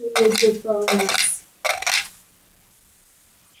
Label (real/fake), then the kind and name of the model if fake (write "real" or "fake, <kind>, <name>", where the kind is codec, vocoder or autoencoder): real